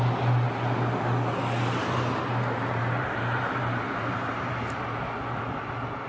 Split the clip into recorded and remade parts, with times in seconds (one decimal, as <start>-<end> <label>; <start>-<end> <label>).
0.0-1.8 recorded; 1.8-5.4 remade; 5.4-6.1 recorded